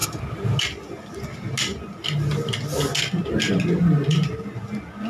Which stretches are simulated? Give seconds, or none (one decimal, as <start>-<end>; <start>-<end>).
none